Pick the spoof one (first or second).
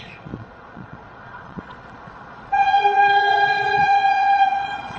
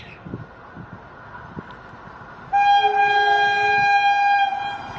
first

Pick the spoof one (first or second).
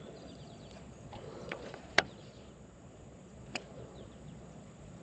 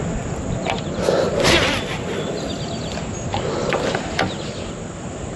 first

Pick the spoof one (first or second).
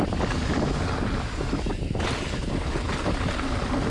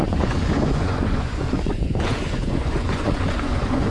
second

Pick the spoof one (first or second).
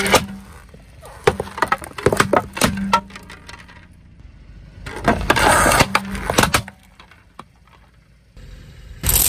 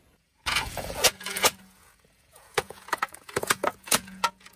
second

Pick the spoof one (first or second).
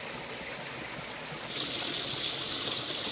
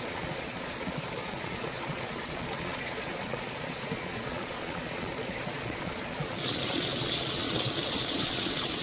second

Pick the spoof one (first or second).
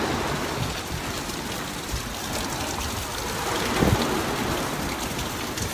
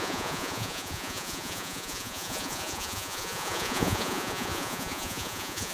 second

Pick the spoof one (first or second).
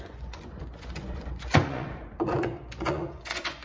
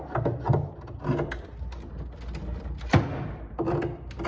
first